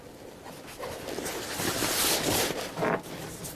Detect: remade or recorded recorded